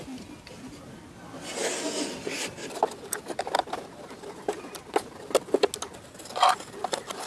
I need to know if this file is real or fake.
real